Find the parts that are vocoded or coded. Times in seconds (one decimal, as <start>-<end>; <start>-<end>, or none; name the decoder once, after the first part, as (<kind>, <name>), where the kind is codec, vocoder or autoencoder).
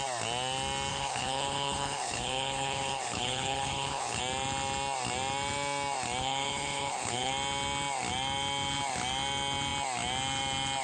0.9-4.2 (codec, HILCodec); 6.2-7.3